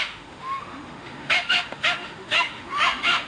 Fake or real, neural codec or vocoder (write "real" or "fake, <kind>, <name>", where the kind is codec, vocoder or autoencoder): fake, autoencoder, DAC-VAE